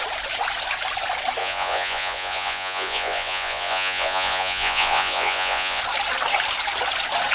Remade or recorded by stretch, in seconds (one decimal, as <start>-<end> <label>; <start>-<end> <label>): 0.0-1.4 recorded; 1.4-5.8 remade; 5.8-7.3 recorded